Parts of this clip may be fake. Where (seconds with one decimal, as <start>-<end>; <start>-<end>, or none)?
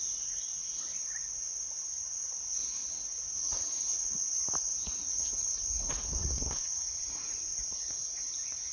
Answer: 0.0-3.1; 3.8-8.7